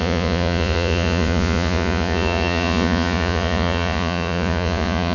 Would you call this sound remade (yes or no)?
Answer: yes